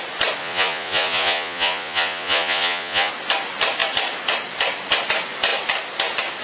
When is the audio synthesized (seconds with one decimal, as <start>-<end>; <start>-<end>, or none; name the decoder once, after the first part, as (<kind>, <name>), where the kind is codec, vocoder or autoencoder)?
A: 0.4-3.1 (vocoder, Vocos)